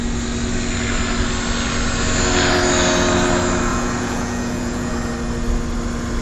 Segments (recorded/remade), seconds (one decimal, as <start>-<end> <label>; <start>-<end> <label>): 0.0-3.7 recorded; 3.7-4.9 remade; 4.9-6.2 recorded